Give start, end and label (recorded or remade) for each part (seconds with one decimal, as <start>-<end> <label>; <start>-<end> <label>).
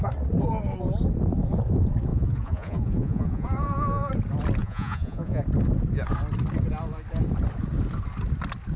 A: 0.0-2.1 recorded; 2.1-4.1 remade; 4.1-4.6 recorded; 4.6-5.4 remade; 5.4-8.8 recorded